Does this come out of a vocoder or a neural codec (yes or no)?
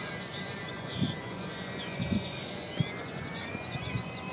yes